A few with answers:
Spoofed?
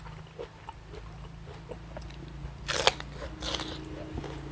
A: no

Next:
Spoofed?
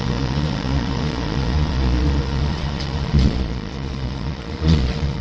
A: yes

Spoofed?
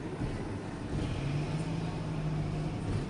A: no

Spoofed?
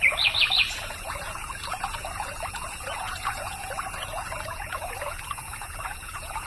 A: yes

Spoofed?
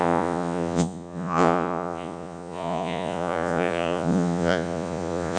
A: yes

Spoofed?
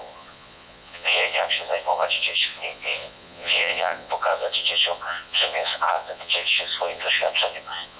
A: yes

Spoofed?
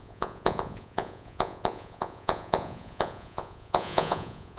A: yes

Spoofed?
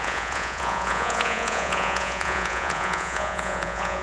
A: yes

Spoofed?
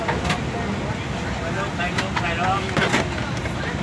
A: no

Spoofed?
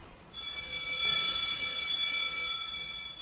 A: yes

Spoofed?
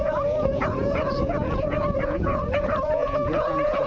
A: yes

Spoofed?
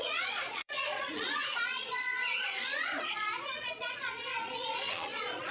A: yes